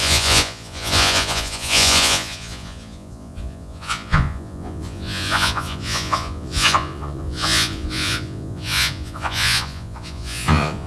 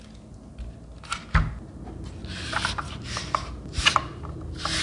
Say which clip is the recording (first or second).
second